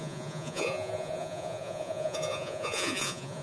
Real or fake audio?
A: fake